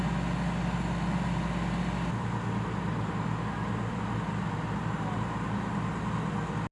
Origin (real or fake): real